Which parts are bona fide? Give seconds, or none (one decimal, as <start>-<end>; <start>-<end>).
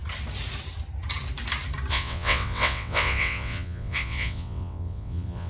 0.0-1.9